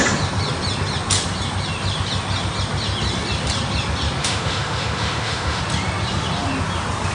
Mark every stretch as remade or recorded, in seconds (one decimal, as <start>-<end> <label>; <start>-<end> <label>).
0.0-4.2 recorded; 4.2-5.6 remade; 5.6-7.1 recorded